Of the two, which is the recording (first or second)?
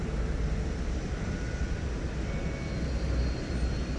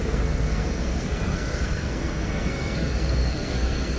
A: first